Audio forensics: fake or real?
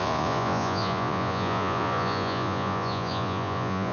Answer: fake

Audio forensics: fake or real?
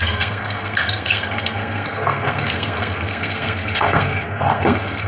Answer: fake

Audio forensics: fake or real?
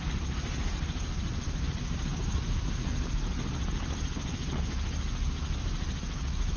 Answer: real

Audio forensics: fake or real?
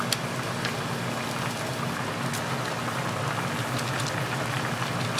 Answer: real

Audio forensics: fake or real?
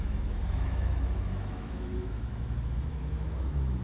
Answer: fake